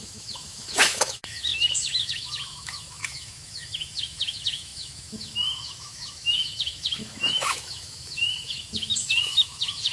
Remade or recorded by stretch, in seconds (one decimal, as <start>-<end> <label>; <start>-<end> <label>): 0.0-9.9 remade